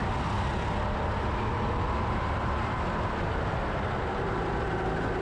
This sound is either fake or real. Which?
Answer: real